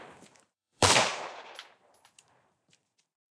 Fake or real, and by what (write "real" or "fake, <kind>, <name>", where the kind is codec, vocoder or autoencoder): fake, vocoder, BigVGAN v2